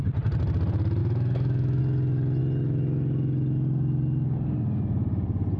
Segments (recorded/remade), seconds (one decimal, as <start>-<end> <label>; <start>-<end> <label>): 0.0-1.0 recorded; 1.0-1.8 remade; 1.8-5.6 recorded